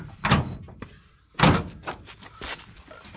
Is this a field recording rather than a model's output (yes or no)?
yes